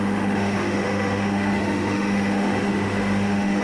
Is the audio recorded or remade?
remade